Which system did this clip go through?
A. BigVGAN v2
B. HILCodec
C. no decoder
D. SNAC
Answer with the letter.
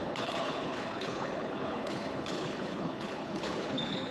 B